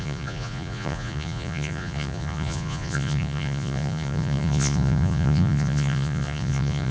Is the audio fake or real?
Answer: fake